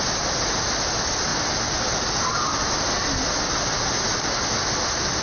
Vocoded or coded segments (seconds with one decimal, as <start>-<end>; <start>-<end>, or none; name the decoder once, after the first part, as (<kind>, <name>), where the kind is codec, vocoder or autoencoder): none